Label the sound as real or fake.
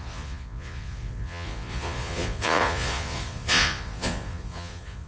fake